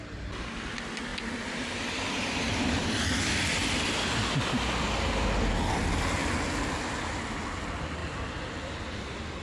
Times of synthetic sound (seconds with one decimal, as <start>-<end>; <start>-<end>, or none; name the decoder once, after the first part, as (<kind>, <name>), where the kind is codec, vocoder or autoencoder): none